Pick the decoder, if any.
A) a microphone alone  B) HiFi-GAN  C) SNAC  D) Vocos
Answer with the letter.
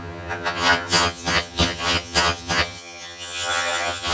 B